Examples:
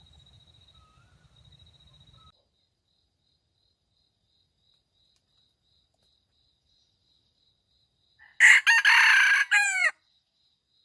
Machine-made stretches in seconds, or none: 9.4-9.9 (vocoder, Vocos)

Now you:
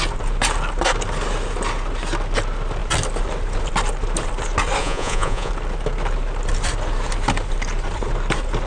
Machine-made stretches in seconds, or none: 4.8-5.5 (vocoder, Vocos)

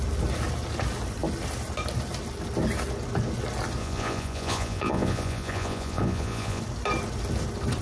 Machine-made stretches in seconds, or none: 3.8-6.6 (vocoder, Vocos)

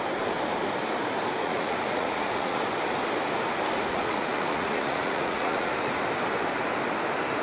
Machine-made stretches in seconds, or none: 1.4-2.6 (vocoder, Vocos); 3.9-5.9

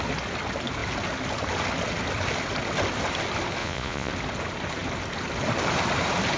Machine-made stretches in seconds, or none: 3.6-4.1 (vocoder, Vocos)

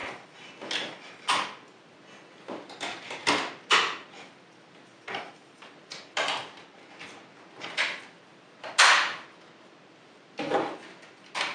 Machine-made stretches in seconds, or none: none

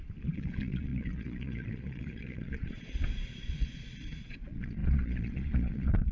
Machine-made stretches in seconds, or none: 0.0-6.1 (vocoder, Vocos)